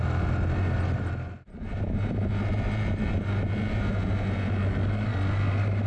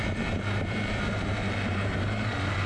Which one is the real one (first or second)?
first